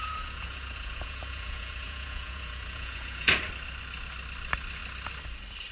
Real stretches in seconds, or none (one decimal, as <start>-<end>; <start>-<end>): 3.4-5.7